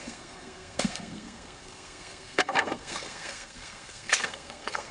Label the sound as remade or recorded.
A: remade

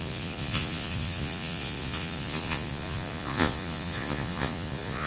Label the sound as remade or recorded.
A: remade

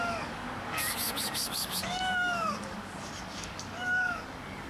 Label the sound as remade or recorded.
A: remade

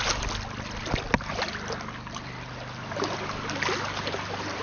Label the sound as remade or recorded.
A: recorded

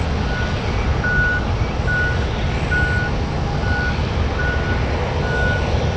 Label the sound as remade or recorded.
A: recorded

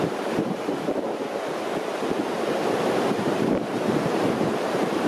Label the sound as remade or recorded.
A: remade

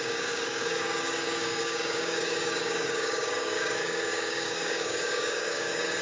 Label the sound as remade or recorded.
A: remade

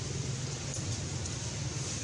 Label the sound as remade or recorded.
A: recorded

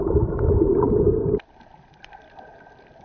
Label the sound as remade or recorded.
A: recorded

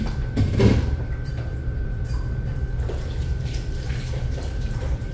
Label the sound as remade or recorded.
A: remade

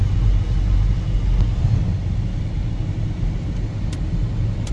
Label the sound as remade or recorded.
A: recorded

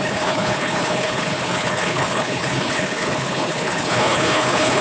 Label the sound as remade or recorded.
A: remade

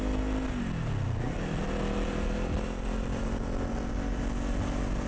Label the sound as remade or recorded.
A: recorded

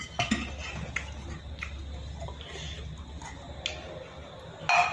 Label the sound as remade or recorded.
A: recorded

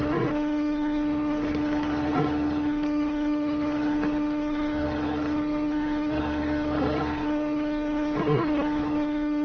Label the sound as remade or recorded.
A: remade